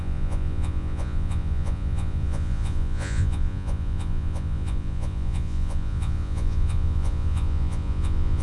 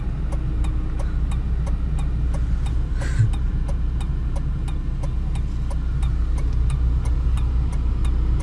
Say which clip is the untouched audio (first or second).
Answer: second